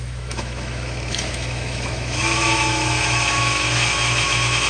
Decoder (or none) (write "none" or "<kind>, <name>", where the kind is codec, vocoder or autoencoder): autoencoder, DAC-VAE